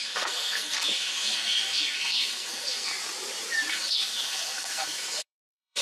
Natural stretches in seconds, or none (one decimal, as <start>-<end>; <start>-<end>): 2.9-3.7

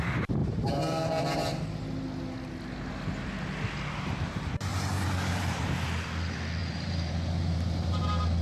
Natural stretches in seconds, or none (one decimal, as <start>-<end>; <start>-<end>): 0.0-0.4; 1.8-4.7; 5.8-6.6; 8.0-8.4

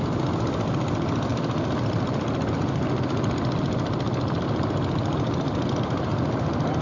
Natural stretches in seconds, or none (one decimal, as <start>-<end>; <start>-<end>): 0.0-6.8

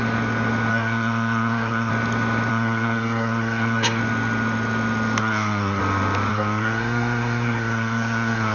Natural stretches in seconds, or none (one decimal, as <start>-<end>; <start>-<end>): 0.0-0.7; 1.9-2.5; 4.0-5.2; 5.8-6.3

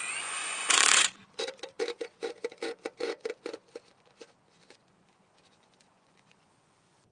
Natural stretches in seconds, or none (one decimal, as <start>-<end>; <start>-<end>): none

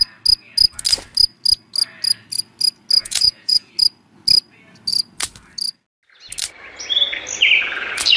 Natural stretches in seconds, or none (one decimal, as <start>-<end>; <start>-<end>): 0.0-3.0; 3.7-8.2

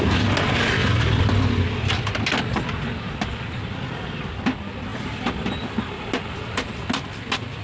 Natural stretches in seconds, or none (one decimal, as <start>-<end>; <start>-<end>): 0.0-7.6